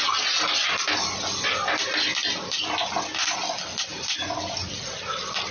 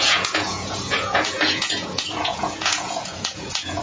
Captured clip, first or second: first